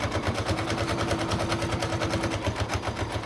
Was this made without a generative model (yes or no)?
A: yes